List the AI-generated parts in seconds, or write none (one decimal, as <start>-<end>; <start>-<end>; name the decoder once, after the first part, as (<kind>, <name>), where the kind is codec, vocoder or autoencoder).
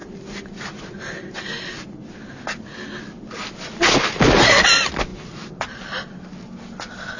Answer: none